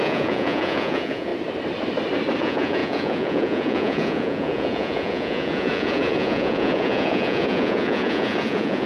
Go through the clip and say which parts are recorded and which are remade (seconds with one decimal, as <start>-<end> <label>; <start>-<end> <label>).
0.0-1.3 remade; 1.3-2.4 recorded; 2.4-8.9 remade

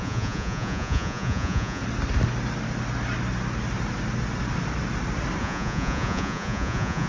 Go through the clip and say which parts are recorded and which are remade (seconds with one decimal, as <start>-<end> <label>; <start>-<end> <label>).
0.0-1.8 remade; 1.8-5.4 recorded; 5.4-7.1 remade

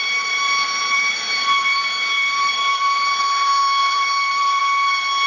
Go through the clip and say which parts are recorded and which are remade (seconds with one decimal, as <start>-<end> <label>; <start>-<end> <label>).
0.0-3.2 remade; 3.2-3.8 recorded; 3.8-4.6 remade; 4.6-5.3 recorded

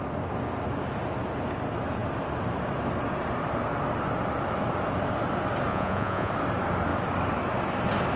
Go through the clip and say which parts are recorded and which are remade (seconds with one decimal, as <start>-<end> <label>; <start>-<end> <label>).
0.0-5.7 recorded; 5.7-6.3 remade; 6.3-8.2 recorded